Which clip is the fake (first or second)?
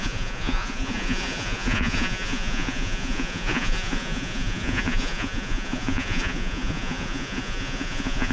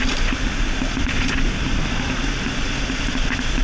first